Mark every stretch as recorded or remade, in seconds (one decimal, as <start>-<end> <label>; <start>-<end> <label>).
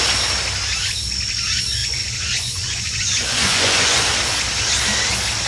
0.0-1.8 recorded; 1.8-4.0 remade; 4.0-5.5 recorded